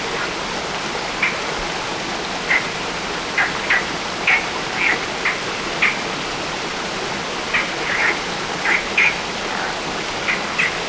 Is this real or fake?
real